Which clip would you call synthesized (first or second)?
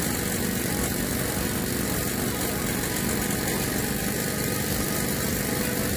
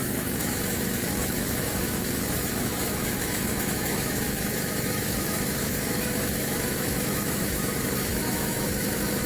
second